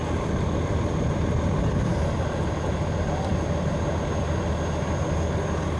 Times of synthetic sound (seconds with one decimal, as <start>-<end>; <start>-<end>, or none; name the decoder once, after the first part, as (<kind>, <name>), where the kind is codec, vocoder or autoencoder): none